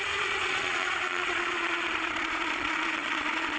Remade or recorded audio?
remade